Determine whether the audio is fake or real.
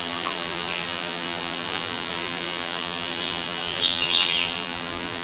fake